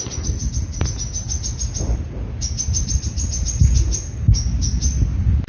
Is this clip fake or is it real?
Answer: real